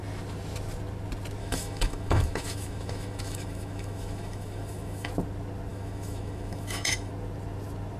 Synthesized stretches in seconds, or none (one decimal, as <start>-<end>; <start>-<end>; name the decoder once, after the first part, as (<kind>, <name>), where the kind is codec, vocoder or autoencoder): 1.4-5.1 (autoencoder, DAC-VAE); 5.7-7.1

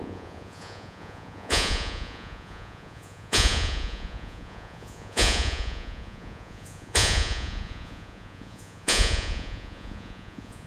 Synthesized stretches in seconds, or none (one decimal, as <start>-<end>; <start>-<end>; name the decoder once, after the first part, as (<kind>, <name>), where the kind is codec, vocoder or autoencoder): 0.0-10.7 (vocoder, Vocos)